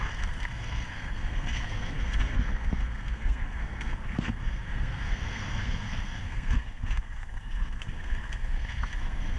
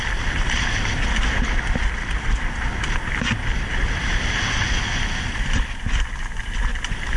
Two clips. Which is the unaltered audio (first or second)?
second